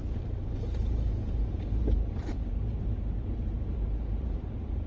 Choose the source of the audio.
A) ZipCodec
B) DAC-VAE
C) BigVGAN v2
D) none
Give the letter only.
C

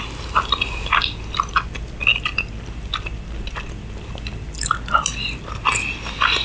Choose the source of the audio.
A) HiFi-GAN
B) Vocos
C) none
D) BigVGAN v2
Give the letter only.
C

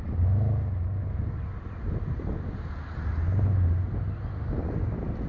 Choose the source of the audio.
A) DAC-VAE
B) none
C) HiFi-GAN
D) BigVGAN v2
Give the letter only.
B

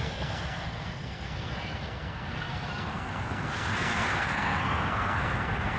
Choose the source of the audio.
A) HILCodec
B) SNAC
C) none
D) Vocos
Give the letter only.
B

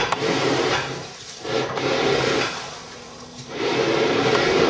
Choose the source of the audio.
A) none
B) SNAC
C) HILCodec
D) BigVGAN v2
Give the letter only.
D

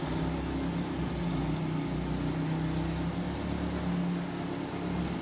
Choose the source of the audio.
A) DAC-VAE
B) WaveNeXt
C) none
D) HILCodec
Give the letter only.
C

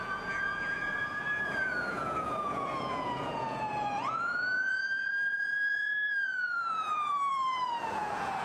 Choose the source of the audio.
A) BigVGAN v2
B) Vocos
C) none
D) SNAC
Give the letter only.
B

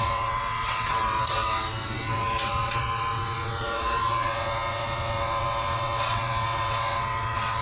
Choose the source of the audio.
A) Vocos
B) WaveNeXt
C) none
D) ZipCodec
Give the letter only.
B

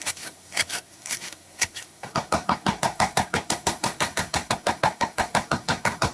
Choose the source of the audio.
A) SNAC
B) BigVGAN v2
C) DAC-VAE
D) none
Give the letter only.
A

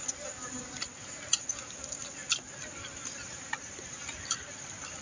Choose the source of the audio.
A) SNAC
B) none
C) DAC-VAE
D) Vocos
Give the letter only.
B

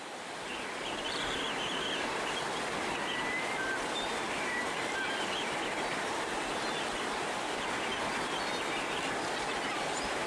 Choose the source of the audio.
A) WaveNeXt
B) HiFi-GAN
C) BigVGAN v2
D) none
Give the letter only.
C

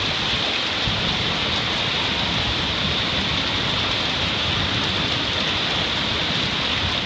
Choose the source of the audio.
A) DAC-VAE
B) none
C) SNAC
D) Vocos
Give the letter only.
B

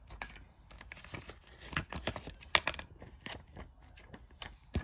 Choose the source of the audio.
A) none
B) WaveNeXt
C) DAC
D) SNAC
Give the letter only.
A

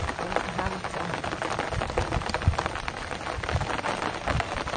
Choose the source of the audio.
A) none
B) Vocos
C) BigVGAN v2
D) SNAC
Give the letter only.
A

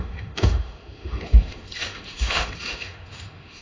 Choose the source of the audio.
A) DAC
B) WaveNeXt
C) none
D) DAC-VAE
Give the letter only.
D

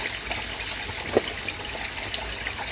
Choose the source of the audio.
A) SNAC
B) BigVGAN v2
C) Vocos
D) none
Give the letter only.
D